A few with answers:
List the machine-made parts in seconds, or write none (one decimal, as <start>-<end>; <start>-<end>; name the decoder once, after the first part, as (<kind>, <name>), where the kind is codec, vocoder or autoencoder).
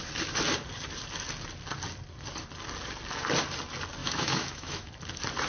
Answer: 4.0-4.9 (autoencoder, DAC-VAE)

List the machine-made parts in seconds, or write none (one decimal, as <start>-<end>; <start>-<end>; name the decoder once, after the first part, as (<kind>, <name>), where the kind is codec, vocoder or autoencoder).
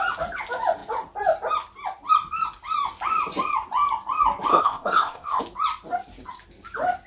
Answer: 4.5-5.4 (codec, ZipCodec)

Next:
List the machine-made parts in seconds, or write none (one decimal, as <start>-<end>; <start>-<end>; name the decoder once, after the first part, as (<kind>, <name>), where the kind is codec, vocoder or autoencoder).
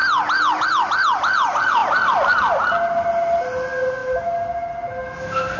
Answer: none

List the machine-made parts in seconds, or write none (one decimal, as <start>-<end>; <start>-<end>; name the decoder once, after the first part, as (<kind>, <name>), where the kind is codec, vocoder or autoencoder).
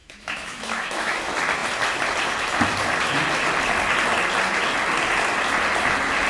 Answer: 0.0-1.2 (autoencoder, DAC-VAE)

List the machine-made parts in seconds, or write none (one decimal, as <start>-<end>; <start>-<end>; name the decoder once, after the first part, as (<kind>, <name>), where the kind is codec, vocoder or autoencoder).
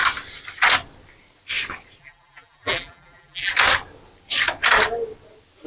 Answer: 2.0-3.5 (vocoder, BigVGAN v2)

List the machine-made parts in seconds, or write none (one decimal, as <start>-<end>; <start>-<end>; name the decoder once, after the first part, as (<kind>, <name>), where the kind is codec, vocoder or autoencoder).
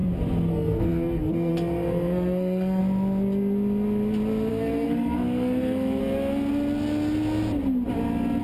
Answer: 0.5-2.8 (codec, SNAC); 4.5-6.0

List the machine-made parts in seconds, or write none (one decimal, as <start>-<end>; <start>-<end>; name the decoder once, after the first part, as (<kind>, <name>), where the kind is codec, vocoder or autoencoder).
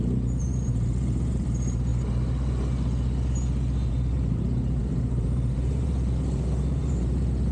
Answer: 0.0-1.9 (vocoder, BigVGAN v2); 3.9-7.5